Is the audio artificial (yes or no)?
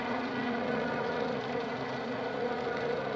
yes